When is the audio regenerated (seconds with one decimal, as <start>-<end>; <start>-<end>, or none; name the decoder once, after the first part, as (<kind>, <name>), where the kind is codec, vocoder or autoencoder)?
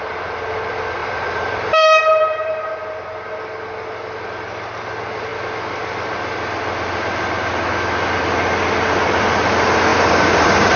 1.0-2.7 (vocoder, BigVGAN v2); 9.9-10.8